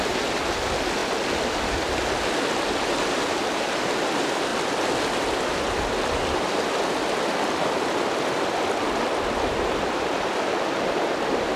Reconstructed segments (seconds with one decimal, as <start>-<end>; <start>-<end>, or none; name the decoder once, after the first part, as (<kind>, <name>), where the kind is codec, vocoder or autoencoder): none